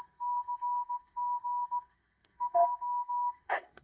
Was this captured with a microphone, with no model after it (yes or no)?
no